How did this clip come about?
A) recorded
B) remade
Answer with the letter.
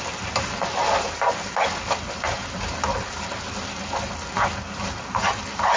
A